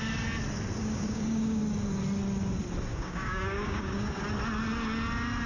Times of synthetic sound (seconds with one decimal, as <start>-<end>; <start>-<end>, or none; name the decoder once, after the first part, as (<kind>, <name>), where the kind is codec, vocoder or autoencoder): 0.8-1.6 (codec, DAC); 2.9-4.2